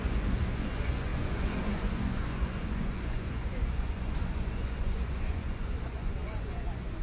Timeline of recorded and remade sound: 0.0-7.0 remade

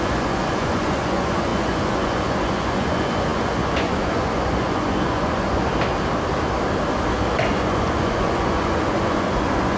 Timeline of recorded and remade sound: 0.0-5.7 remade; 5.7-7.5 recorded; 7.5-9.8 remade

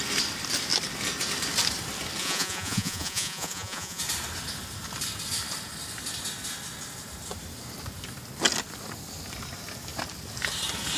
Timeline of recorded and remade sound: 0.0-2.2 recorded; 2.2-4.0 remade; 4.0-11.0 recorded

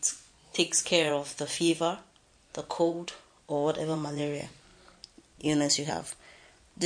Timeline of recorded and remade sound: 0.0-1.7 remade; 1.7-2.8 recorded; 2.8-4.7 remade; 4.7-5.9 recorded; 5.9-6.9 remade